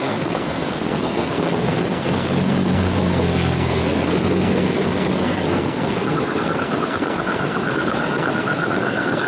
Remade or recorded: remade